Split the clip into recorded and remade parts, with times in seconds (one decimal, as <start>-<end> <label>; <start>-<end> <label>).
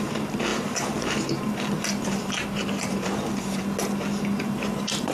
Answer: 0.0-0.5 recorded; 0.5-3.6 remade; 3.6-4.3 recorded; 4.3-5.1 remade